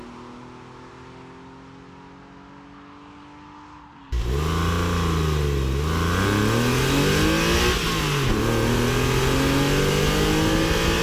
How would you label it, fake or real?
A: real